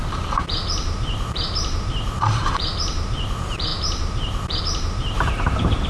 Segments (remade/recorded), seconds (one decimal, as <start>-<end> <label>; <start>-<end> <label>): 0.0-5.9 remade